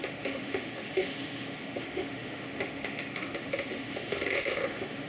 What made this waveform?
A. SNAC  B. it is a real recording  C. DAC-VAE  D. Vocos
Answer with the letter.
C